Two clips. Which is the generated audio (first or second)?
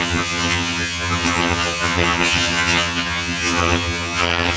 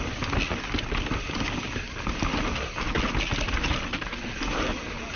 first